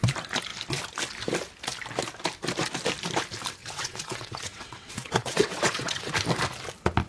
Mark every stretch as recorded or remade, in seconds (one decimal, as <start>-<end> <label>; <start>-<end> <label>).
0.0-3.6 recorded; 3.6-6.1 remade; 6.1-7.1 recorded

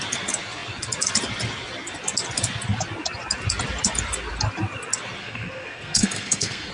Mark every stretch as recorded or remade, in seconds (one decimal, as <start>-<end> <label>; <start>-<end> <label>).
0.0-5.2 recorded; 5.2-6.7 remade

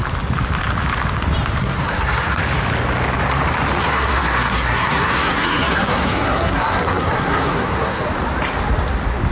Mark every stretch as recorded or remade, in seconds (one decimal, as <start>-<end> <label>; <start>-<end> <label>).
0.0-1.6 recorded; 1.6-2.4 remade; 2.4-3.8 recorded; 3.8-8.0 remade; 8.0-9.3 recorded

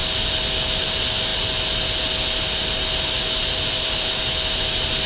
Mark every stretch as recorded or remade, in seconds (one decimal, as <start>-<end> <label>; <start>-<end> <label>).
0.0-5.1 recorded

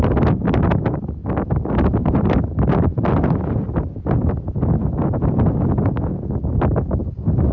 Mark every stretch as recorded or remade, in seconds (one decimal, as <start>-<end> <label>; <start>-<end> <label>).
0.0-7.5 recorded

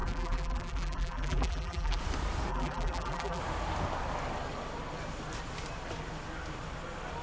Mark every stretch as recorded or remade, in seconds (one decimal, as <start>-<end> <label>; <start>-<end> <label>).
0.0-2.0 remade; 2.0-2.5 recorded; 2.5-3.4 remade; 3.4-7.2 recorded